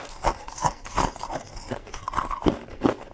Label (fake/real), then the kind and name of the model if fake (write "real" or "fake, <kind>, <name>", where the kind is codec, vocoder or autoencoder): fake, codec, SNAC